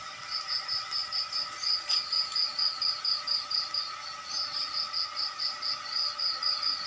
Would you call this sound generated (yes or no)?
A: no